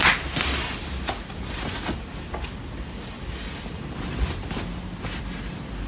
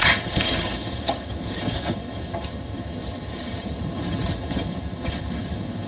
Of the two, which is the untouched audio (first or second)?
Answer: first